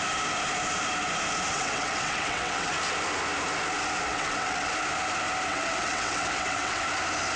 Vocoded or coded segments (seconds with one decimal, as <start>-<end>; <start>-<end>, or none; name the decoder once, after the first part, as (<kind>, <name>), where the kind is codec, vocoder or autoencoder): 1.5-2.7 (vocoder, WaveNeXt); 4.1-4.7; 5.5-6.8